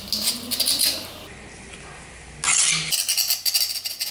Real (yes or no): yes